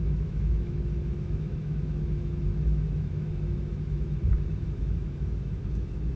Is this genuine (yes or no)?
no